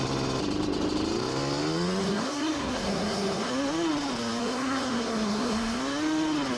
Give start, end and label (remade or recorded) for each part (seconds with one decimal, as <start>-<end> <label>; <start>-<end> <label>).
0.0-2.0 recorded; 2.0-3.5 remade; 3.5-4.4 recorded; 4.4-5.8 remade; 5.8-6.6 recorded